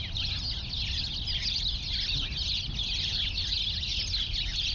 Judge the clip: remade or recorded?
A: recorded